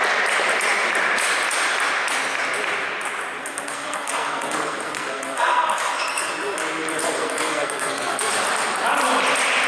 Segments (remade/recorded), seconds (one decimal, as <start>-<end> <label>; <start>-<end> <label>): 0.0-3.4 recorded; 3.4-6.3 remade; 6.3-7.0 recorded; 7.0-8.3 remade; 8.3-9.7 recorded